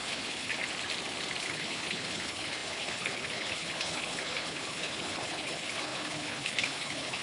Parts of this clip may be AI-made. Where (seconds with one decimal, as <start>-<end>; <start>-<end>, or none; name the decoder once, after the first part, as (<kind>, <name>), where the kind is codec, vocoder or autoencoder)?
0.0-0.6 (codec, HILCodec); 1.4-7.2